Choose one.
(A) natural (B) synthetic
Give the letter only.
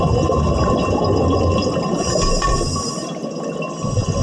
A